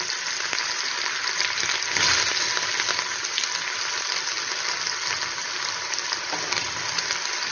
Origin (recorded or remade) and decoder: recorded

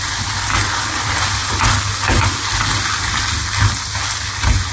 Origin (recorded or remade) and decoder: recorded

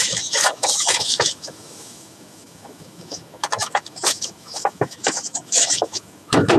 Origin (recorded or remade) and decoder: remade, autoencoder, DAC-VAE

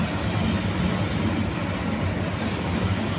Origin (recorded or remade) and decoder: recorded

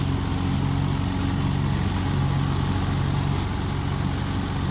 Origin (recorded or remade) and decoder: recorded